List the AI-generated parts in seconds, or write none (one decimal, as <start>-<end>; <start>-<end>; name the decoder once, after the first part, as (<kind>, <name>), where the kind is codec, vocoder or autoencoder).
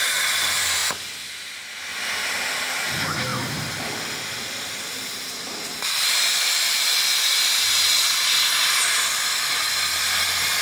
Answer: 5.7-8.2 (vocoder, BigVGAN v2)